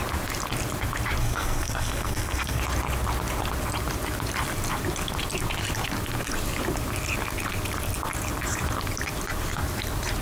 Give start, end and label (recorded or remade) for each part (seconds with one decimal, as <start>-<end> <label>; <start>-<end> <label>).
0.0-1.2 recorded; 1.2-2.6 remade; 2.6-10.2 recorded